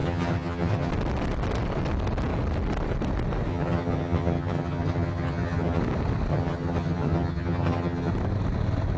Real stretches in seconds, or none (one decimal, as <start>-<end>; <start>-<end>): 0.9-3.5; 5.8-6.3; 8.1-9.0